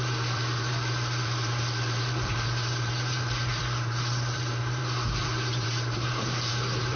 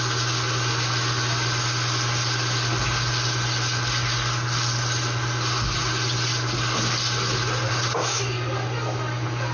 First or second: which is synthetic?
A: first